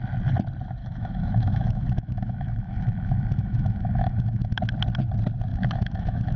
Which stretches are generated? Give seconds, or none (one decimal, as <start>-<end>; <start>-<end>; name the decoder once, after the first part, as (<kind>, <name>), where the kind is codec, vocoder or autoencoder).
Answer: 0.8-4.6 (autoencoder, DAC-VAE); 5.5-6.4